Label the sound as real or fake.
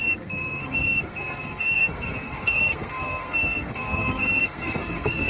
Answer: fake